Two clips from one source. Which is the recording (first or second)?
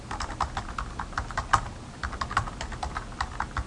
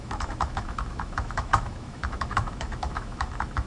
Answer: first